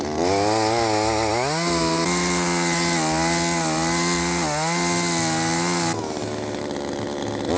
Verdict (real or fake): real